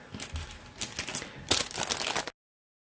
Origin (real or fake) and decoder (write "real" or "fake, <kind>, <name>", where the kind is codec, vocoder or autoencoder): real